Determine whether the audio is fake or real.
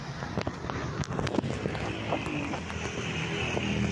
real